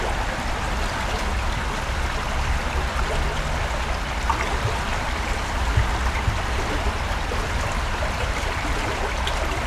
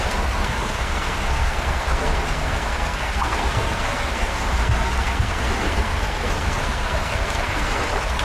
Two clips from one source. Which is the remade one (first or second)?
second